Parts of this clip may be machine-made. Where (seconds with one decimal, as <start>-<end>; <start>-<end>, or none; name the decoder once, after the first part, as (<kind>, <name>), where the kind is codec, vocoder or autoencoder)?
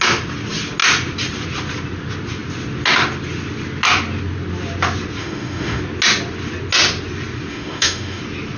5.2-5.8 (autoencoder, DAC-VAE); 7.5-8.2